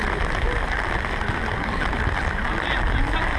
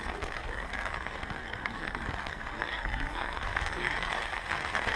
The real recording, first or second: first